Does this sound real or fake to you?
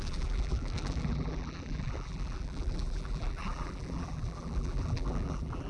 fake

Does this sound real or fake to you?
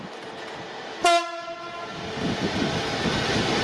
real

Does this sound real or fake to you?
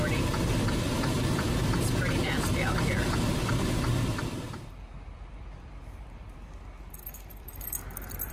fake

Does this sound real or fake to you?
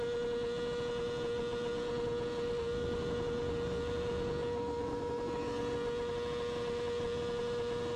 real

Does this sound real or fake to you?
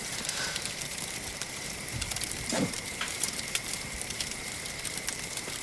fake